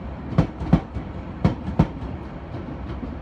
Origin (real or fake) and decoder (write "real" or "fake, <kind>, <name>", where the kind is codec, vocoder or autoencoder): real